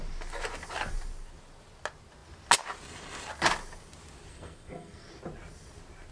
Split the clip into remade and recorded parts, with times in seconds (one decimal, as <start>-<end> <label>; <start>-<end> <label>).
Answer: 0.0-4.3 recorded; 4.3-5.1 remade; 5.1-6.1 recorded